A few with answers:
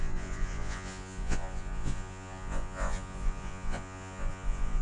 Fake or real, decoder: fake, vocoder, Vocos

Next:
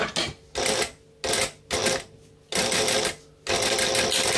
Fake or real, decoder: real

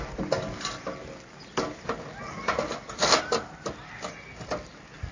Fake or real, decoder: real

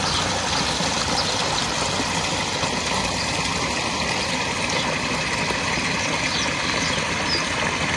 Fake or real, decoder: real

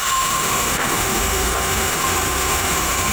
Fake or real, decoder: fake, autoencoder, DAC-VAE